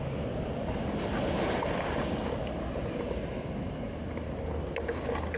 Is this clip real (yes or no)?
yes